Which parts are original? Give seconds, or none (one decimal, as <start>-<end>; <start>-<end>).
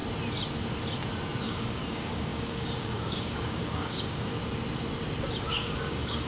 0.0-1.4; 4.4-5.4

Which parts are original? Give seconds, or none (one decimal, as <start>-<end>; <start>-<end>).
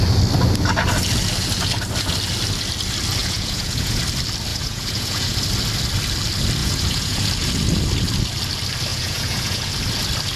0.0-3.2; 4.0-4.5; 5.4-6.6; 7.2-8.9; 9.7-10.4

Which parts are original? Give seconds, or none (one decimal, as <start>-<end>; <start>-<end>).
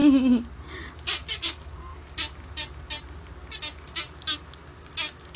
0.0-1.3; 1.9-5.4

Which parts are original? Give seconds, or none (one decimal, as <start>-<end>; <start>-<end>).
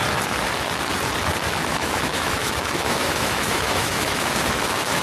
0.0-1.7